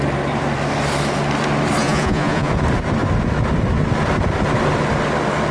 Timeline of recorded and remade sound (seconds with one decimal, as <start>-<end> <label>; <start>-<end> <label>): 0.0-1.8 recorded; 1.8-2.5 remade; 2.5-5.5 recorded